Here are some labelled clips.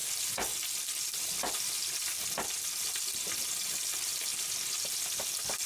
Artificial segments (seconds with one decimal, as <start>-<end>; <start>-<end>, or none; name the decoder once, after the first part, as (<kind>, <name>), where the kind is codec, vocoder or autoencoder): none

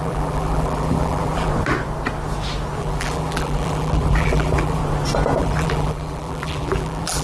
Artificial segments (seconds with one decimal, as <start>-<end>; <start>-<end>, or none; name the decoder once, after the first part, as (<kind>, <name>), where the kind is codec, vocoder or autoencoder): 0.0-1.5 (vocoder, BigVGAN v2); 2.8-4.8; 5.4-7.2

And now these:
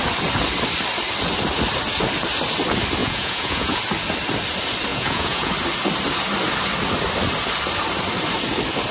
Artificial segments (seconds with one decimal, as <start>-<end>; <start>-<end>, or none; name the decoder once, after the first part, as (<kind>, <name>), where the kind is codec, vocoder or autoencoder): 3.0-3.8 (vocoder, Vocos); 4.9-5.5

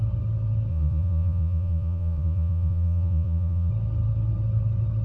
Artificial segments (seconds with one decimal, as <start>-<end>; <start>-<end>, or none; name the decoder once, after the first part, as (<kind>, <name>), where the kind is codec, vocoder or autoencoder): 0.7-3.7 (vocoder, Vocos)